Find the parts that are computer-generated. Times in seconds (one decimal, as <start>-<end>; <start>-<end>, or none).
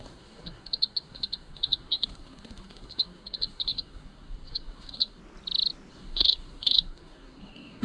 0.0-5.2; 5.9-7.8